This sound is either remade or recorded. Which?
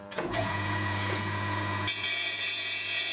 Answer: remade